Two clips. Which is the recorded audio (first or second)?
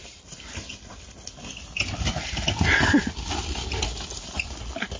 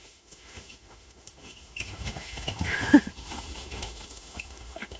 first